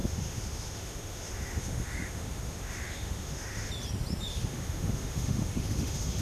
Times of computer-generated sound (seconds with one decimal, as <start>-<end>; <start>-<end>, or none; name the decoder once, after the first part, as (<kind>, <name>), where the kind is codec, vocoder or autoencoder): 0.0-3.7 (autoencoder, DAC-VAE); 4.3-6.2